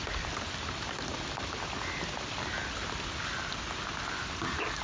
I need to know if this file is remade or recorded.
recorded